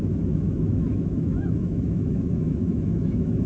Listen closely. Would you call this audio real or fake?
fake